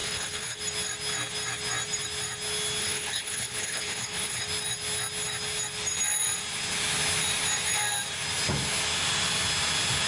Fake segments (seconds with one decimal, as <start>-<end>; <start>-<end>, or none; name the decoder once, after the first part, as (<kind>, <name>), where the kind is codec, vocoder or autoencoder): 0.0-0.6 (codec, HILCodec); 2.8-4.4

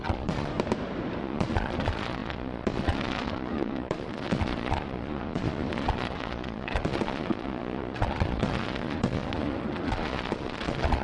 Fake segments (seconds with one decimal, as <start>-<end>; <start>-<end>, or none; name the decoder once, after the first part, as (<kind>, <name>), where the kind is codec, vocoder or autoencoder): 0.0-0.5 (vocoder, Vocos); 1.2-11.0

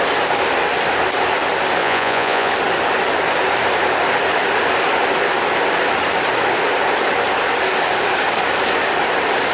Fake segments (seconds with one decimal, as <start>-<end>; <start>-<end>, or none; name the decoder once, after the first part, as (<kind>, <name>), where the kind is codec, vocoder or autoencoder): 1.8-2.5 (vocoder, Vocos)